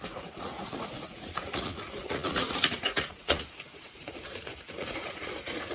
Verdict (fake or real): fake